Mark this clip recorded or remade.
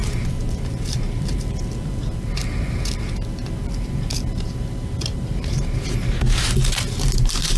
recorded